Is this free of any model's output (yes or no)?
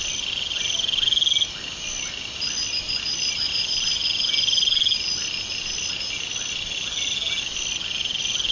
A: yes